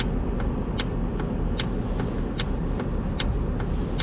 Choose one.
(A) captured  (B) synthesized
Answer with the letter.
A